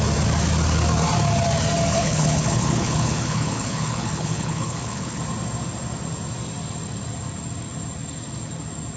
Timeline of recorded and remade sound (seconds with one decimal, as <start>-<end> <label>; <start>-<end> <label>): 0.0-1.9 recorded; 1.9-5.2 remade; 5.2-9.0 recorded